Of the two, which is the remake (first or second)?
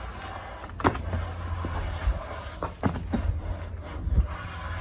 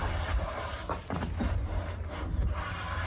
second